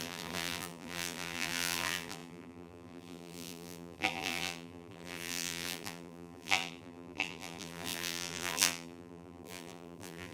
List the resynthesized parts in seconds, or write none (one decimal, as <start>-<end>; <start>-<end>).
0.0-10.3